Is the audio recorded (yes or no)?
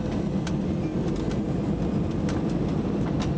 yes